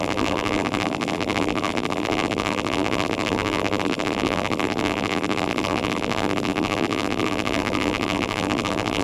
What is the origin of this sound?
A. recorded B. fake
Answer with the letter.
B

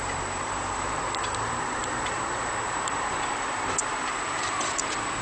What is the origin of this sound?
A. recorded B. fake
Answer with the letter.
B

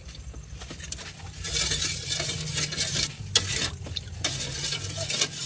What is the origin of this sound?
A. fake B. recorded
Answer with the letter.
B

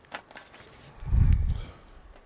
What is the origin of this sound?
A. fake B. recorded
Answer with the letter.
A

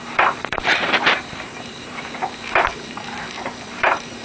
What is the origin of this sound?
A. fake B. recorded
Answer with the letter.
A